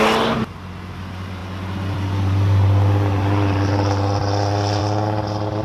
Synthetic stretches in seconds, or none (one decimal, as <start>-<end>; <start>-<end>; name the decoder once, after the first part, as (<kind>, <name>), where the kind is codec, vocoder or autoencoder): none